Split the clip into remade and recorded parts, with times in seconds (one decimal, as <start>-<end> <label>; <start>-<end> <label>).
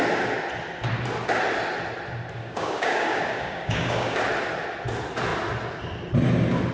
0.0-2.4 recorded; 2.4-4.2 remade; 4.2-6.7 recorded